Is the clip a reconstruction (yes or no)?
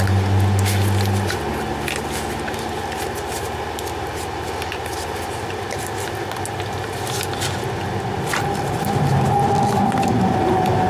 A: no